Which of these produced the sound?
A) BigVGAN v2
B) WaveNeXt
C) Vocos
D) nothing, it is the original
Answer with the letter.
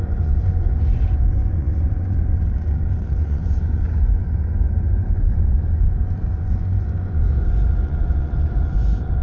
C